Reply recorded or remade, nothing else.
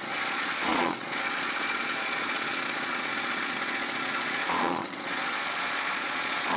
remade